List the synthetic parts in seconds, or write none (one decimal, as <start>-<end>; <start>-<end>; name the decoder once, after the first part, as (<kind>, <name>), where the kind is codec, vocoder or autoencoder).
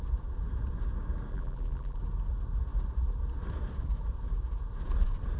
1.3-2.0 (vocoder, BigVGAN v2)